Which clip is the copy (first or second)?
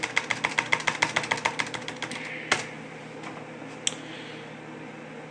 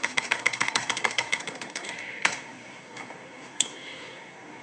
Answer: second